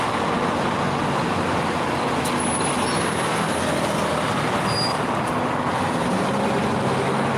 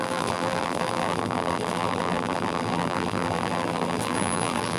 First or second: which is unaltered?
first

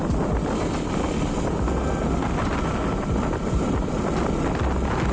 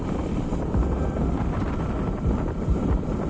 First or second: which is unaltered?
first